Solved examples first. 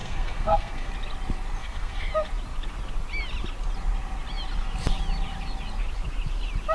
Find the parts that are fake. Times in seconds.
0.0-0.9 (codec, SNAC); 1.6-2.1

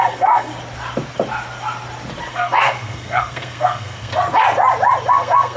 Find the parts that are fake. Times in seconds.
0.0-0.5 (codec, SNAC); 2.3-4.1; 5.1-5.6

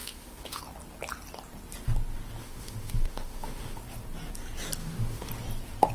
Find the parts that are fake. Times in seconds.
0.0-0.6 (autoencoder, DAC-VAE); 2.4-3.8; 4.8-5.3

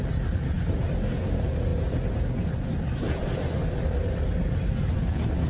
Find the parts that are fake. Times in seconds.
none

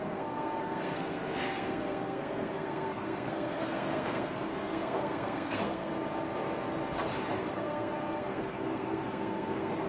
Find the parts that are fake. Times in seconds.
0.0-5.9 (codec, SNAC); 7.4-9.9

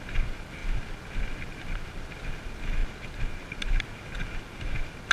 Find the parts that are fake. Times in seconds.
none

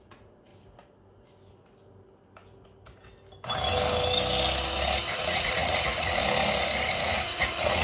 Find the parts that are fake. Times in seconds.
0.0-0.5 (vocoder, Vocos); 5.1-6.2; 7.0-7.8